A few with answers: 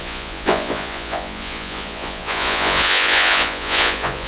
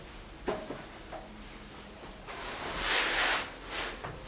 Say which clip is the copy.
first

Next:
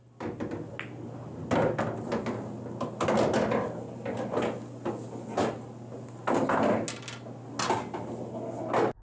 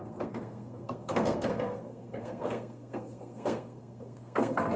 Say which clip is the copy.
second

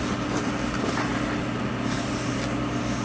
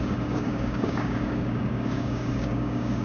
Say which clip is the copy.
second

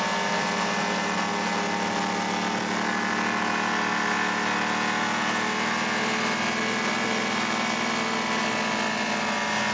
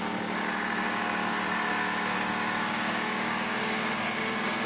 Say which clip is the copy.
second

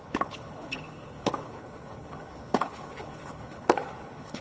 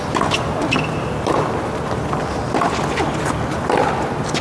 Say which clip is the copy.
first